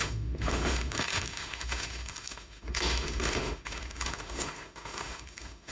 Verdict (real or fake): fake